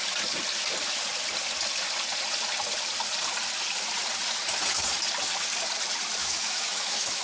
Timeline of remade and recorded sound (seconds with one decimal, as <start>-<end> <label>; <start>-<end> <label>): 0.0-6.2 recorded; 6.2-7.2 remade